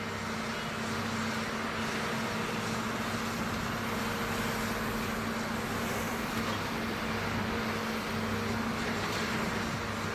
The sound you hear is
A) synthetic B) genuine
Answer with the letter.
B